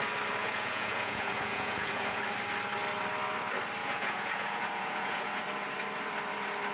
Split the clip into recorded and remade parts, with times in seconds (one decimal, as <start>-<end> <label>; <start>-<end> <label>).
0.0-0.4 recorded; 0.4-2.2 remade; 2.2-3.8 recorded; 3.8-5.4 remade; 5.4-6.7 recorded